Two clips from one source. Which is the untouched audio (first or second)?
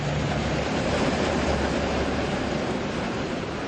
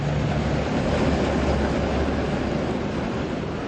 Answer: second